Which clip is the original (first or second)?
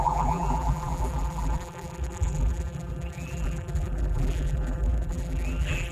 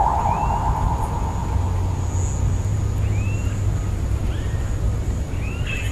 second